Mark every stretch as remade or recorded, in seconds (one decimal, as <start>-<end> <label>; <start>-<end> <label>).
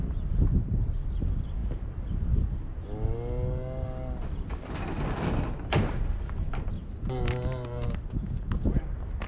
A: 0.0-9.3 recorded